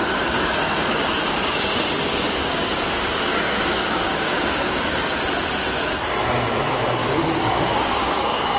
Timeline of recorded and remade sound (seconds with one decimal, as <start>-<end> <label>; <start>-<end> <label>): 0.0-5.2 remade; 5.2-7.0 recorded; 7.0-8.6 remade